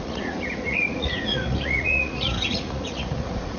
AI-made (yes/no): yes